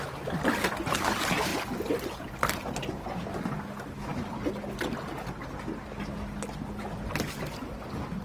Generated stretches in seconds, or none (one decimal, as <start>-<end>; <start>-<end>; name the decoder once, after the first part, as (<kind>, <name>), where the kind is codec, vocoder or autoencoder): none